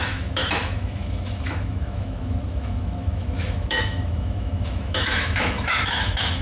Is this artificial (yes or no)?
yes